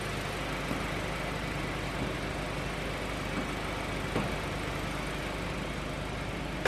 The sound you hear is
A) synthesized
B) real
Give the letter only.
B